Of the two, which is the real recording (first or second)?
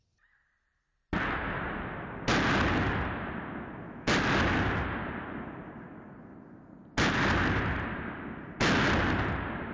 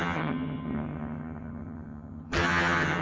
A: first